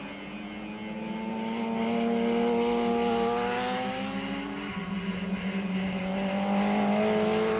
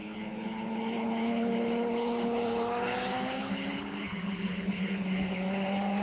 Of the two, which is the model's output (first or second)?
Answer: second